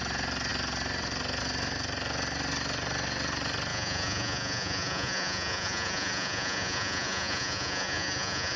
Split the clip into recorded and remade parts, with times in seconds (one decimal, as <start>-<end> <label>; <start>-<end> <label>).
0.0-3.7 recorded; 3.7-8.6 remade